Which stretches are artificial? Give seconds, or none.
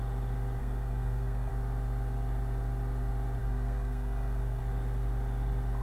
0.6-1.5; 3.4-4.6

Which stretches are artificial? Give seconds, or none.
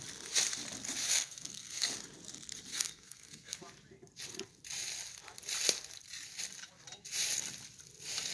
1.1-1.9; 2.7-3.6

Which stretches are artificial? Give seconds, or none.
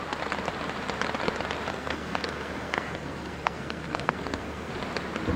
1.7-4.7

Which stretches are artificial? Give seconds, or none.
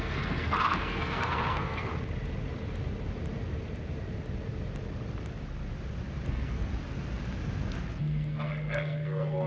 0.0-1.9; 6.3-6.7; 8.0-9.5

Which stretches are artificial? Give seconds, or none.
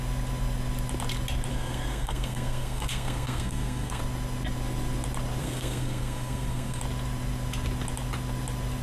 1.5-4.0; 5.4-6.8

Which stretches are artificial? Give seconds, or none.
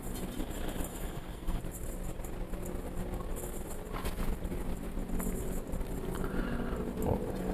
0.9-1.6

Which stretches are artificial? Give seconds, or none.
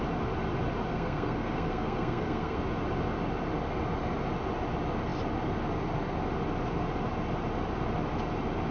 0.9-2.6